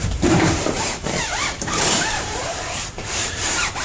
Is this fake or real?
fake